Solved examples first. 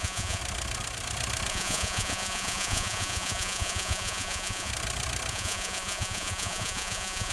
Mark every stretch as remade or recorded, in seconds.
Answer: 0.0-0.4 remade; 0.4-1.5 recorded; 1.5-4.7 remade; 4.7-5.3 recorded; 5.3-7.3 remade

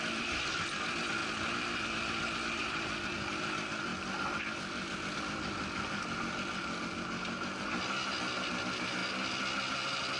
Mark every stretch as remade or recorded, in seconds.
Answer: 0.0-10.2 recorded

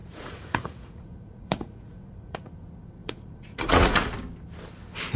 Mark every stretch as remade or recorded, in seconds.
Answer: 0.0-2.5 remade; 2.5-3.0 recorded; 3.0-4.1 remade; 4.1-5.2 recorded

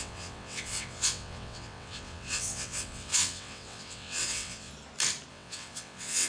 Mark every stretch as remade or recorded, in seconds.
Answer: 0.0-4.7 remade; 4.7-5.3 recorded; 5.3-6.3 remade

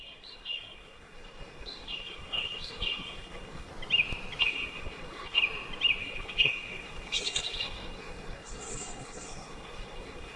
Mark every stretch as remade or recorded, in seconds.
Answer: 0.0-3.7 remade; 3.7-4.4 recorded; 4.4-5.4 remade; 5.4-6.0 recorded; 6.0-10.4 remade

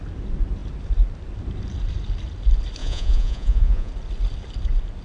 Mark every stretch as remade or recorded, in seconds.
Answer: 0.0-2.8 recorded; 2.8-3.9 remade; 3.9-5.0 recorded